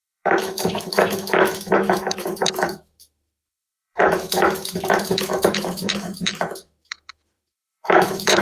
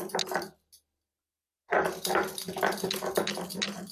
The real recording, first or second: second